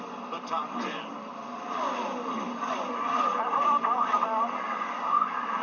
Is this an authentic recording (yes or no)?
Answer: no